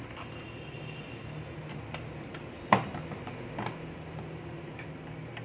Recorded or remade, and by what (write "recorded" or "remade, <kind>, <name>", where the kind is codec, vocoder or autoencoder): recorded